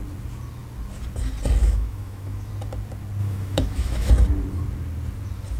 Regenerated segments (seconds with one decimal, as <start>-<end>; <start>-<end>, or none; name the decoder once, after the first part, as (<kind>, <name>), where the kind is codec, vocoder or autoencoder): 1.6-2.5 (autoencoder, DAC-VAE); 3.2-4.1